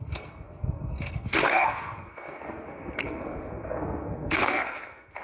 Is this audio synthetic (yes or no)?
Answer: yes